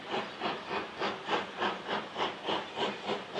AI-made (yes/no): no